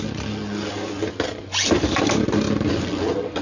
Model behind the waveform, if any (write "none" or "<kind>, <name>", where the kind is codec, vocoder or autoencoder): none